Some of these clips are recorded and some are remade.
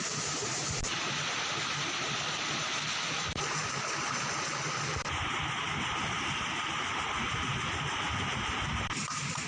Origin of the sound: recorded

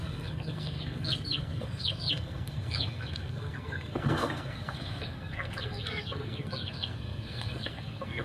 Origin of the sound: remade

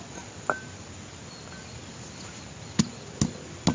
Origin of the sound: recorded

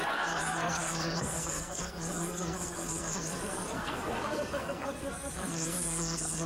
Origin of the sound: remade